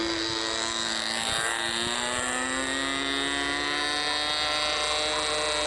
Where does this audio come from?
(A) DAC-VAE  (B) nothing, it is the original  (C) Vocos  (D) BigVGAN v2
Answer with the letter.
B